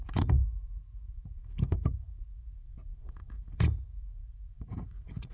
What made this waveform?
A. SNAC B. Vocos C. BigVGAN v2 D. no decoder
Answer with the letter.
B